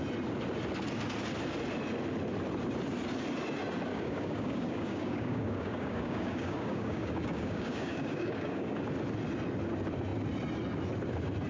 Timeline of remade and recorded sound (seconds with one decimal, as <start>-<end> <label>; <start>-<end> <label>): 0.0-3.9 recorded; 3.9-8.8 remade; 8.8-11.5 recorded